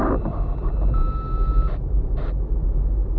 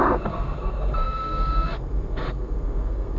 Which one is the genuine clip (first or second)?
first